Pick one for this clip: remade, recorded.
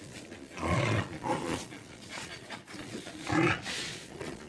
remade